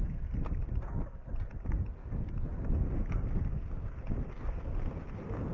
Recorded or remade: recorded